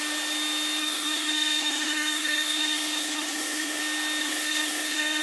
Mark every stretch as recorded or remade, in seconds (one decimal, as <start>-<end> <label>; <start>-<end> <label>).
0.0-0.8 recorded; 0.8-3.8 remade; 3.8-4.2 recorded; 4.2-5.2 remade